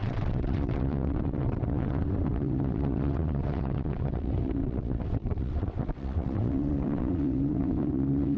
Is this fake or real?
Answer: fake